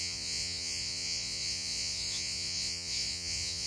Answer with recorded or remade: remade